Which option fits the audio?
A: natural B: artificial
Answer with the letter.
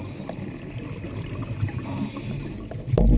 A